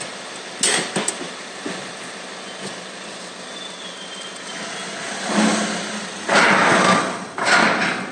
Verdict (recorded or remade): recorded